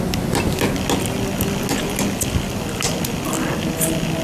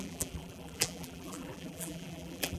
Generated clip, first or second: second